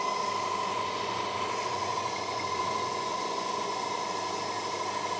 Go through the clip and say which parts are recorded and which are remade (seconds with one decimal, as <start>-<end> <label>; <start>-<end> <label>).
0.0-0.7 recorded; 0.7-3.8 remade; 3.8-5.2 recorded

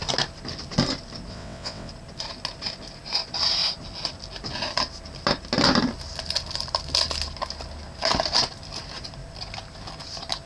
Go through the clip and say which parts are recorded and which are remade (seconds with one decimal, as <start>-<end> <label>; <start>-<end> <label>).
0.0-1.3 recorded; 1.3-1.9 remade; 1.9-10.5 recorded

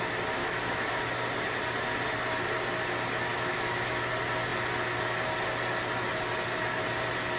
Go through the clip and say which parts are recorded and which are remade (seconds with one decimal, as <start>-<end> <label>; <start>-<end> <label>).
0.0-0.4 recorded; 0.4-1.0 remade; 1.0-3.3 recorded; 3.3-4.1 remade; 4.1-7.4 recorded

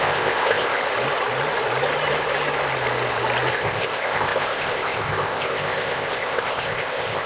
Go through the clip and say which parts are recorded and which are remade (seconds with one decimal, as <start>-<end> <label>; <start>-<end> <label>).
0.0-0.8 remade; 0.8-3.5 recorded; 3.5-7.3 remade